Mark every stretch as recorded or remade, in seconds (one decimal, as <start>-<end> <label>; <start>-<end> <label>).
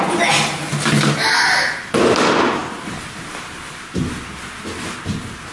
0.0-5.5 recorded